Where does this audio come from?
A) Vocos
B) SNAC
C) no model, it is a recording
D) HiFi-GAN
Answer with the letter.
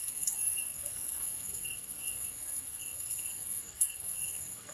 B